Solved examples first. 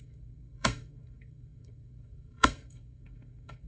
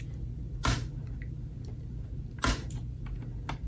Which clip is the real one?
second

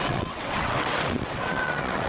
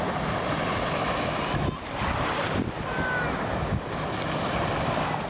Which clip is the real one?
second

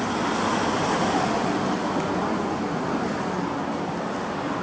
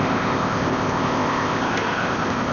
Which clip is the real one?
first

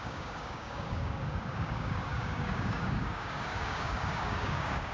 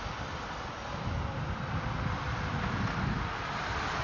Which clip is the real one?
second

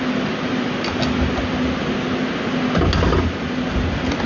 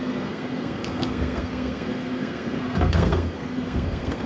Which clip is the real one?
first